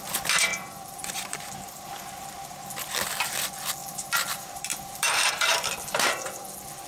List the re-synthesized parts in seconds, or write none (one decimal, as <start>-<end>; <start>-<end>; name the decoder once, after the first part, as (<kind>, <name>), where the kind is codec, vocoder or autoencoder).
0.5-1.5 (vocoder, BigVGAN v2); 3.8-5.3